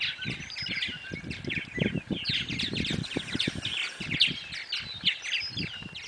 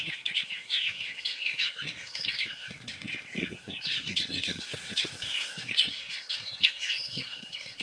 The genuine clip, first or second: first